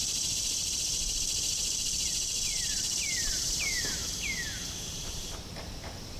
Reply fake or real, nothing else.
fake